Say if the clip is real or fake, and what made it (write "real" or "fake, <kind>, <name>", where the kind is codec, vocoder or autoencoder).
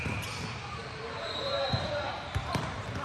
fake, vocoder, BigVGAN v2